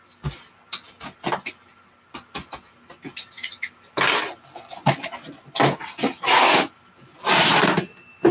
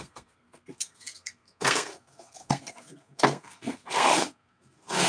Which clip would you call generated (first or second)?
second